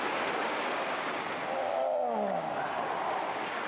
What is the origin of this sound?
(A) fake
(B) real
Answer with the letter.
B